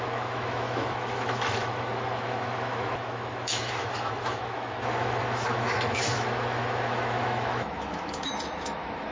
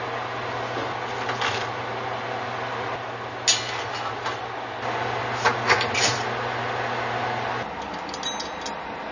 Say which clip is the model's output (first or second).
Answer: first